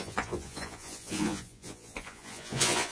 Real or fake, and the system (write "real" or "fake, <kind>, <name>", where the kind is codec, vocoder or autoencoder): fake, vocoder, Vocos